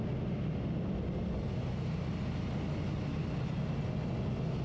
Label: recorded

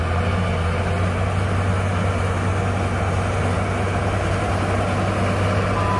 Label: recorded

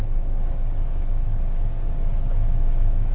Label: remade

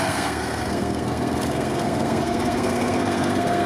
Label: remade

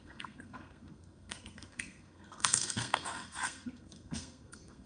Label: remade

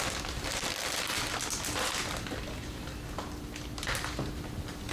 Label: recorded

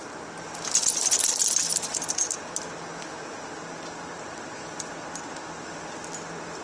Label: recorded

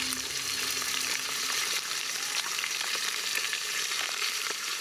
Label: remade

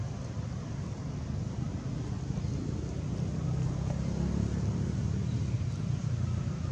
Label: recorded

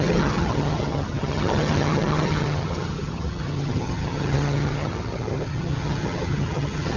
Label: remade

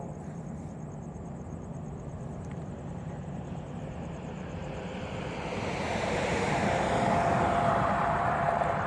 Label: remade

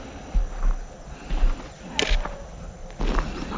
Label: recorded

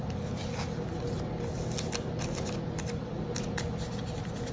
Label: recorded